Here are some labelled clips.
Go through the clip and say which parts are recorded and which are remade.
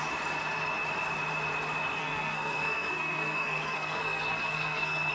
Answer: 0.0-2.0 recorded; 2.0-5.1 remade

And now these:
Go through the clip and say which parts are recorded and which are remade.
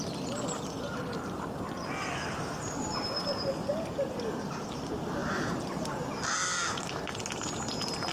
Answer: 0.0-8.1 recorded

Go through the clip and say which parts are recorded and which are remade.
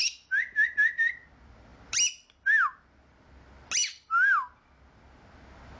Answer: 0.0-5.8 recorded